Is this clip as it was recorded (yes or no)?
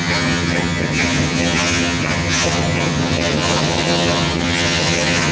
no